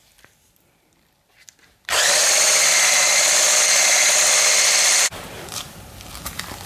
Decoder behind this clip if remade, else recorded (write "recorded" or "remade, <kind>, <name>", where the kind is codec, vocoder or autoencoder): remade, vocoder, BigVGAN v2